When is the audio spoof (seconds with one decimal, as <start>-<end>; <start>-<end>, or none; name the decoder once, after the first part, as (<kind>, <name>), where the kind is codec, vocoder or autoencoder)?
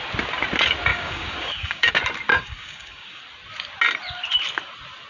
0.9-1.9 (codec, DAC); 2.3-3.2